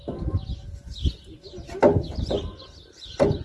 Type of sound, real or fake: real